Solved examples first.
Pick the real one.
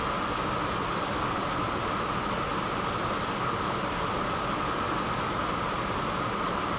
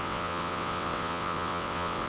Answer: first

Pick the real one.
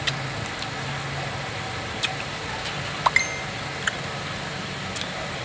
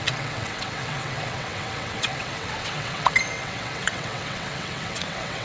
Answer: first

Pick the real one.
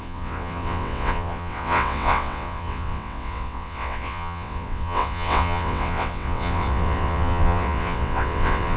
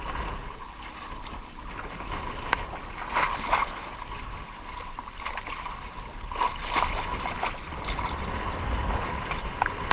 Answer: second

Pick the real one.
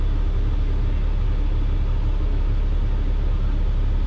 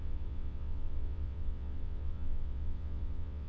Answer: first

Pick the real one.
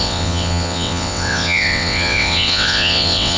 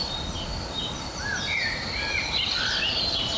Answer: second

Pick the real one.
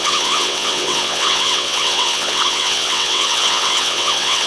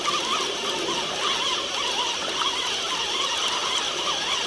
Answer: second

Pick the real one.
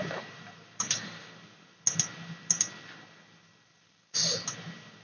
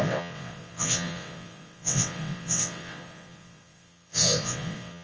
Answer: first